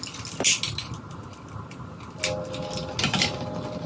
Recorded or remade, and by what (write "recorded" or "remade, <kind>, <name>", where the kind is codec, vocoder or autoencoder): recorded